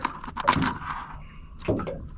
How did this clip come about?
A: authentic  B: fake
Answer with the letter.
A